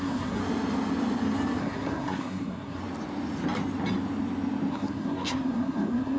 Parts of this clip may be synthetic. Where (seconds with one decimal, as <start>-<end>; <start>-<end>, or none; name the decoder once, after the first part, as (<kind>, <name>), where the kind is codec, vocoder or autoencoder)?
0.0-0.4 (codec, SNAC); 1.6-2.8; 4.7-6.2